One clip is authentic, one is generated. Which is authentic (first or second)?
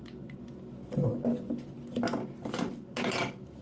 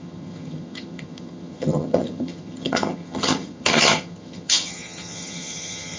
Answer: first